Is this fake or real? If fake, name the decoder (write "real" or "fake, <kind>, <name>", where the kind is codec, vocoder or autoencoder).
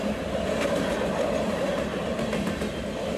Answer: real